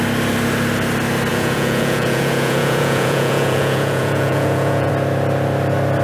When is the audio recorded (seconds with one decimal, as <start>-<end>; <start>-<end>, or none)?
0.0-1.3; 4.9-6.0